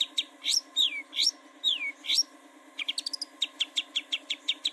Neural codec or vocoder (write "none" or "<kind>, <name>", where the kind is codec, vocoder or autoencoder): none